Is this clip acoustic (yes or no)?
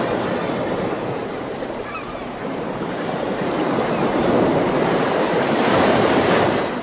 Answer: no